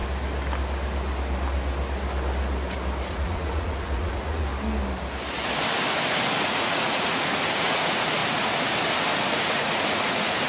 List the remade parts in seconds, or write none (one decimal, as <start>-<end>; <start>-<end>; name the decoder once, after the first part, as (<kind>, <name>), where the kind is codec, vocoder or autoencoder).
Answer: 3.1-4.5 (vocoder, Vocos); 6.4-8.2; 9.5-10.5

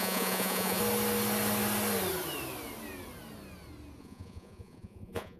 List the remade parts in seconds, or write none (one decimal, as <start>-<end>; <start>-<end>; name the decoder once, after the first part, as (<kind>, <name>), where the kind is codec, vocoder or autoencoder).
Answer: 0.0-0.8 (vocoder, Vocos); 4.0-5.4

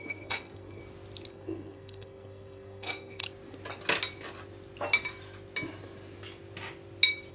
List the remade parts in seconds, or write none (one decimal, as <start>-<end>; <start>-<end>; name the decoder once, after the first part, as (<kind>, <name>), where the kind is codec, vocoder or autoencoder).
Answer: 0.0-0.8 (codec, SNAC); 1.3-3.2

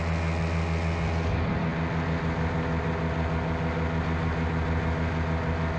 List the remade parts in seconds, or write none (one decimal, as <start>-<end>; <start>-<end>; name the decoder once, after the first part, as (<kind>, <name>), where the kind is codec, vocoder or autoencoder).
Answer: none